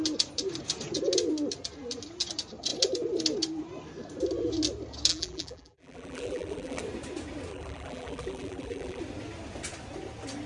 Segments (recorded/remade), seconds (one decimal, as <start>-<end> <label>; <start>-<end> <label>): 0.0-5.1 recorded; 5.1-6.8 remade; 6.8-7.5 recorded; 7.5-9.0 remade; 9.0-10.5 recorded